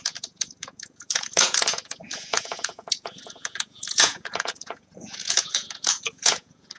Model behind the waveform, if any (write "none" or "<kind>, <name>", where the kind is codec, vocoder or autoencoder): vocoder, Vocos